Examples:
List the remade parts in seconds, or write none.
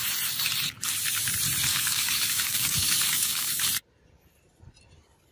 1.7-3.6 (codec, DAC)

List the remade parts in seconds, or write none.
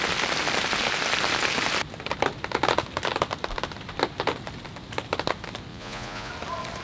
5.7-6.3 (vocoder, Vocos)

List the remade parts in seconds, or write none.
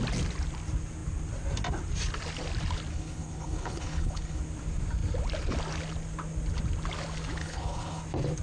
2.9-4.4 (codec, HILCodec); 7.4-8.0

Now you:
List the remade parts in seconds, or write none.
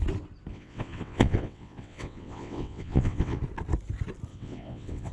0.5-3.4 (vocoder, WaveNeXt); 4.3-5.1